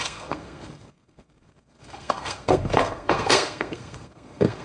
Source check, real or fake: fake